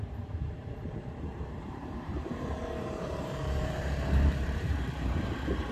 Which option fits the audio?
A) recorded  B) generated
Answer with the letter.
B